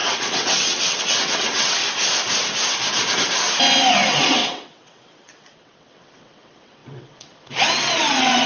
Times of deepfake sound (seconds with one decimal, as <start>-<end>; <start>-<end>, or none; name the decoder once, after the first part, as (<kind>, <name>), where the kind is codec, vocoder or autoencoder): 0.0-1.8 (vocoder, WaveNeXt); 3.9-8.5